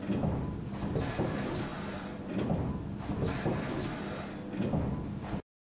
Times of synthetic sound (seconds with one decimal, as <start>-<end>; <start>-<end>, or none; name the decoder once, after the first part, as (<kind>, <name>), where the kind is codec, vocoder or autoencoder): 1.7-3.6 (vocoder, BigVGAN v2)